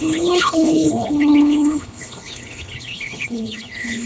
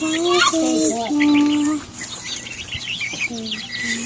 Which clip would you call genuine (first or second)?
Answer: second